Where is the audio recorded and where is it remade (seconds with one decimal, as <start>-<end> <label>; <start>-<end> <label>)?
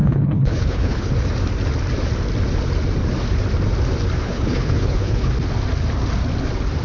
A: 0.0-1.1 remade; 1.1-4.2 recorded; 4.2-5.3 remade; 5.3-6.8 recorded